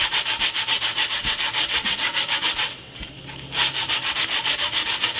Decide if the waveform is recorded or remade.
recorded